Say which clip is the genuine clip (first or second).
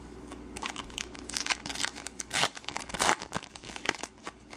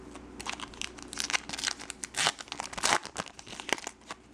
second